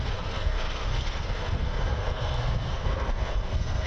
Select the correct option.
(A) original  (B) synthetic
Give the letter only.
B